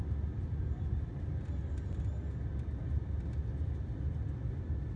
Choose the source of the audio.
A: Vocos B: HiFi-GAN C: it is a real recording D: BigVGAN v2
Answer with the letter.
C